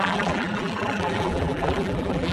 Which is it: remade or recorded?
remade